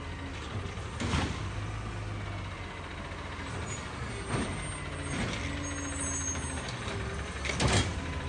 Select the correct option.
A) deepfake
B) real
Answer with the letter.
B